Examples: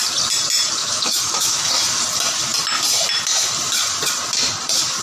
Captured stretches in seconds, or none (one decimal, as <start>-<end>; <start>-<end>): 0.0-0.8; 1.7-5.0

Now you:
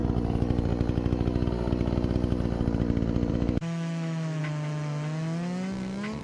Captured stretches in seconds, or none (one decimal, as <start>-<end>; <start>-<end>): 0.0-3.3; 4.4-6.2

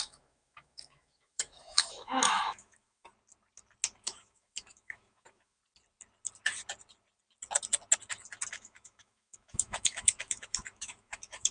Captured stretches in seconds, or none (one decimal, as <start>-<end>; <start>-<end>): 3.1-4.0; 5.6-8.5